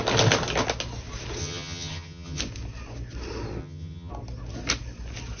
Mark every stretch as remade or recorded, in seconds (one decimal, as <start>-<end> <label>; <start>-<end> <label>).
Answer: 0.0-1.4 recorded; 1.4-2.4 remade; 2.4-3.6 recorded; 3.6-4.1 remade; 4.1-5.4 recorded